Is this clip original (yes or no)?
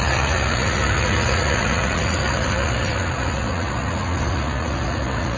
no